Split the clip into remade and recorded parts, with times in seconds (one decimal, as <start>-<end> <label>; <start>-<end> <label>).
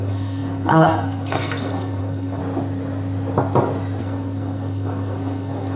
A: 0.0-2.4 remade; 2.4-4.0 recorded; 4.0-5.8 remade